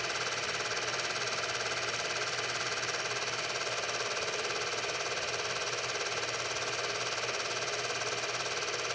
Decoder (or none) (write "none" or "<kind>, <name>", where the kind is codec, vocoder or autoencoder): none